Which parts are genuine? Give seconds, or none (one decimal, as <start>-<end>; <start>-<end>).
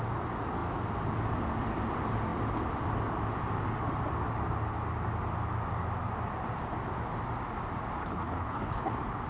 0.0-8.0; 8.9-9.3